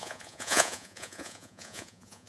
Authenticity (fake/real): fake